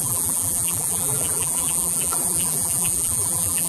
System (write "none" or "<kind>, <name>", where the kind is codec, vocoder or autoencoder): vocoder, BigVGAN v2